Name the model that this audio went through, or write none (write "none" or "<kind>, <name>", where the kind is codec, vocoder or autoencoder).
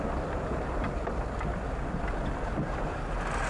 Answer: none